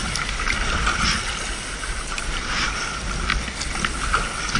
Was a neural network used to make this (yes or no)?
no